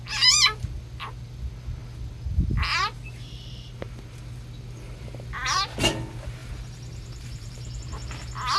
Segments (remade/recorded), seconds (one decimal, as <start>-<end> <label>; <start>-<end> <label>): 0.0-6.4 recorded; 6.4-7.8 remade; 7.8-8.6 recorded